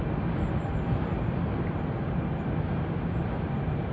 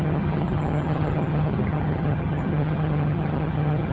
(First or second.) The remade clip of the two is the second